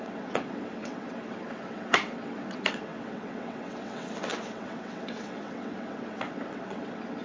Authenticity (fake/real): fake